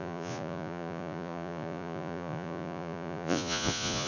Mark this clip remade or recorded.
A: remade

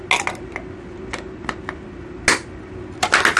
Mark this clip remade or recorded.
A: recorded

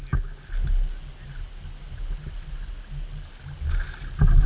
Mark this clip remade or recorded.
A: recorded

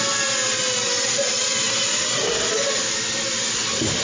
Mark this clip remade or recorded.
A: recorded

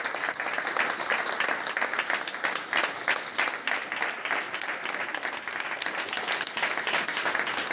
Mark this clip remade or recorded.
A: recorded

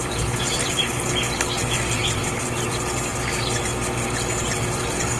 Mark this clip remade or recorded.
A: recorded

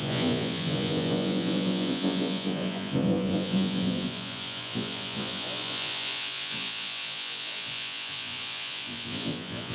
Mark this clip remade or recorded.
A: remade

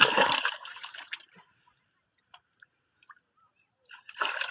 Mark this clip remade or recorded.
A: remade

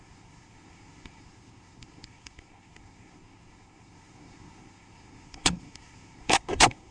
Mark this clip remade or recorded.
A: remade